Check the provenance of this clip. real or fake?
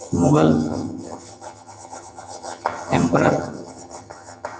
fake